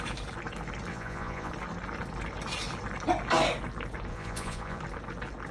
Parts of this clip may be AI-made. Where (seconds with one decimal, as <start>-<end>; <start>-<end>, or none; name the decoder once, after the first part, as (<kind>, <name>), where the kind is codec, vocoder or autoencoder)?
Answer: 0.9-1.5 (vocoder, Vocos); 4.1-4.8